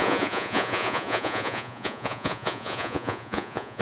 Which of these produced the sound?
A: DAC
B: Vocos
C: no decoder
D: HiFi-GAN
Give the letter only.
B